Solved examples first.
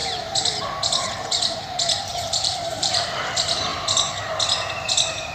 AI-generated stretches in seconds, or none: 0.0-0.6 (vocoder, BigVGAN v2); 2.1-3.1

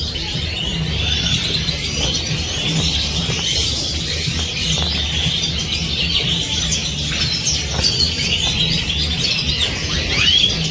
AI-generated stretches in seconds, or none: none

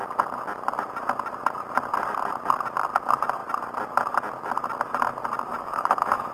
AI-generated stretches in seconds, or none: 5.5-6.3 (autoencoder, DAC-VAE)

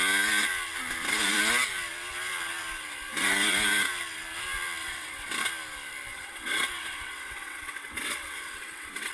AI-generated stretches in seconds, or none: 4.8-5.3 (vocoder, WaveNeXt); 6.1-9.1

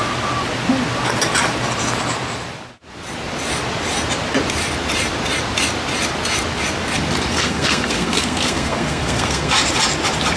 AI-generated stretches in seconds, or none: 7.3-9.5 (codec, SNAC)